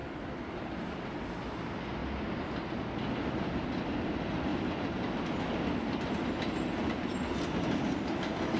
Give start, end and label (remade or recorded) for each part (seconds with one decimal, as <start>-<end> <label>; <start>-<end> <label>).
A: 0.0-1.3 remade; 1.3-2.0 recorded; 2.0-3.1 remade; 3.1-8.6 recorded